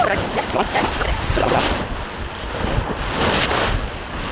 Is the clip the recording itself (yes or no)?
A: yes